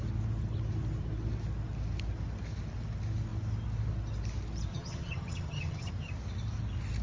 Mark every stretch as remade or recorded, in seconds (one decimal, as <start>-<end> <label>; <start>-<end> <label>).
0.0-4.7 recorded; 4.7-5.9 remade; 5.9-7.0 recorded